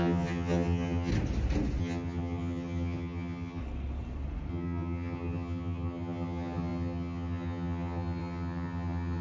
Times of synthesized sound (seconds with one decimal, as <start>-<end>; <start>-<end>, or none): 0.0-1.1; 1.8-3.6; 4.5-9.2